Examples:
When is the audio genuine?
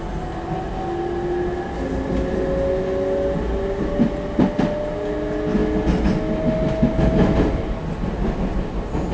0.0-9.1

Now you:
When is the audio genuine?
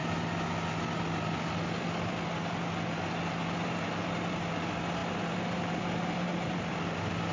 0.0-7.3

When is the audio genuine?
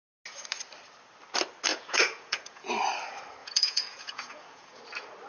0.0-1.7; 2.7-3.4; 4.8-5.3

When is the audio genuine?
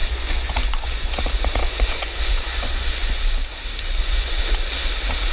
3.2-3.9; 4.4-5.3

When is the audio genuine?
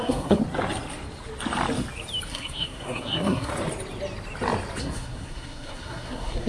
0.4-2.3; 3.5-4.8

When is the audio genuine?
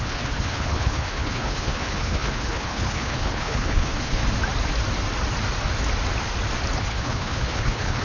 4.2-6.8